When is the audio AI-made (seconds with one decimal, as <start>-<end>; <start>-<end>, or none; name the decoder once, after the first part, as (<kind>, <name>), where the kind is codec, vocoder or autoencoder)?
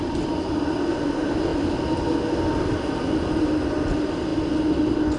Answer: none